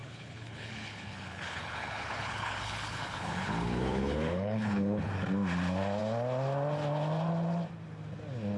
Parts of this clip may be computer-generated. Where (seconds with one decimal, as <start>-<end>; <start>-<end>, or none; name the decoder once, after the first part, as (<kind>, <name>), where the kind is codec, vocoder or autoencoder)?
0.0-5.1 (codec, HILCodec)